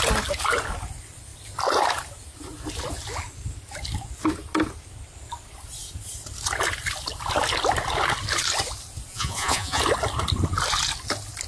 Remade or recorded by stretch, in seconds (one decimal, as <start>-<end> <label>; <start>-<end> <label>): 0.0-9.1 recorded; 9.1-9.8 remade; 9.8-11.5 recorded